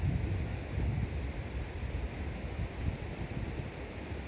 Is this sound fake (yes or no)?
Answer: no